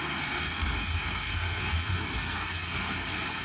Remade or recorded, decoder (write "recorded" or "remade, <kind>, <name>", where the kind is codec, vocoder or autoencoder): remade, codec, SNAC